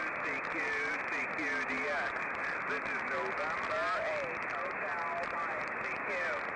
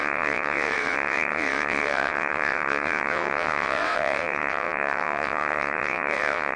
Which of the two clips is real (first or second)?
first